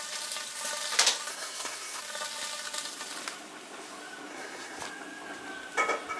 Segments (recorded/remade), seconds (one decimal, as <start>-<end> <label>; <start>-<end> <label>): 0.0-1.3 recorded; 1.3-2.0 remade; 2.0-4.3 recorded; 4.3-4.8 remade; 4.8-6.2 recorded